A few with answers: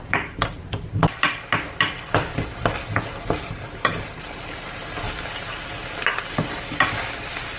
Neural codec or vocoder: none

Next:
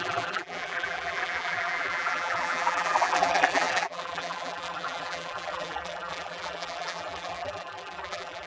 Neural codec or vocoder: vocoder, BigVGAN v2